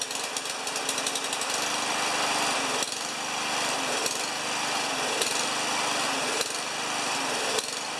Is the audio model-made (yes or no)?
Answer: no